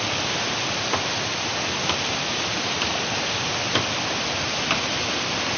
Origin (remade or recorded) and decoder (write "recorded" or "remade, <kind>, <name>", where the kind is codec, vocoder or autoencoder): recorded